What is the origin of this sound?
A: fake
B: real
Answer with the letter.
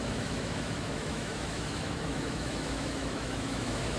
A